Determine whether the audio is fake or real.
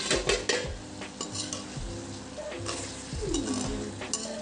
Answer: real